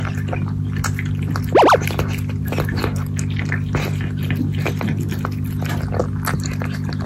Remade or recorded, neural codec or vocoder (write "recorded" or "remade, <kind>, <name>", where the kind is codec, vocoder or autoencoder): recorded